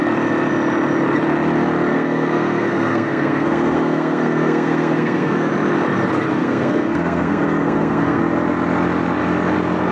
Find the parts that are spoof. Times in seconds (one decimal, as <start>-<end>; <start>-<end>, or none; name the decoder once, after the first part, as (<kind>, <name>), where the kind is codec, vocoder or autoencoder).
1.9-5.5 (codec, SNAC); 6.4-8.2